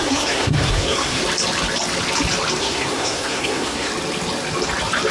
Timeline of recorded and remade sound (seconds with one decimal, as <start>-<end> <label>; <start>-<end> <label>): 0.0-1.2 remade; 1.2-2.6 recorded; 2.6-3.9 remade; 3.9-5.1 recorded